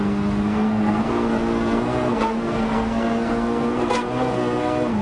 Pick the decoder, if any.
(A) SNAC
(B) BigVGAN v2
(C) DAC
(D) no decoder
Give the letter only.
A